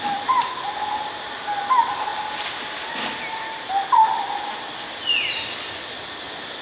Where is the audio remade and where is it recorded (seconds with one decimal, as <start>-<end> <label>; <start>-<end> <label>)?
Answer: 0.0-6.6 recorded